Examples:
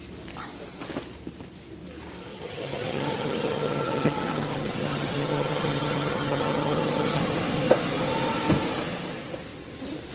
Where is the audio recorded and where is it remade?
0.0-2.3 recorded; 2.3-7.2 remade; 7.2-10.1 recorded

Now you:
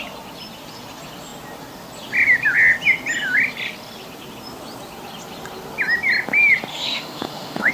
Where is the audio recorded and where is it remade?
0.0-6.7 recorded; 6.7-7.7 remade

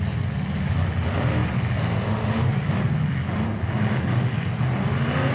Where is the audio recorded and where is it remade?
0.0-5.3 recorded

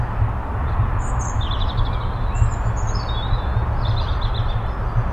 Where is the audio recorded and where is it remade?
0.0-0.4 recorded; 0.4-1.1 remade; 1.1-5.1 recorded

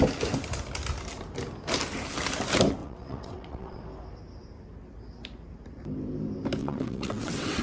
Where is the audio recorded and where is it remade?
0.0-2.8 recorded; 2.8-3.8 remade; 3.8-6.6 recorded; 6.6-7.6 remade

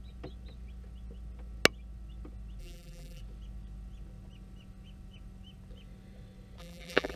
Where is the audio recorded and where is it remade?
0.0-2.6 recorded; 2.6-3.2 remade; 3.2-6.6 recorded; 6.6-7.2 remade

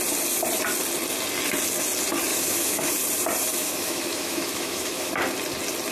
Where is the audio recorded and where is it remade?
0.0-2.3 recorded; 2.3-2.9 remade; 2.9-3.6 recorded; 3.6-5.1 remade; 5.1-5.9 recorded